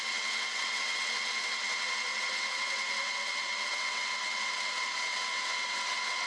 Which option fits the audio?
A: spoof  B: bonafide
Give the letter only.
A